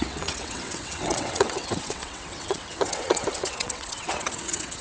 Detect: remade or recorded remade